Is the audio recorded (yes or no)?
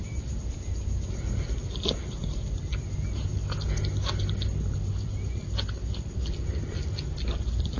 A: yes